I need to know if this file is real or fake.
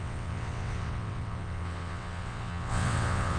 fake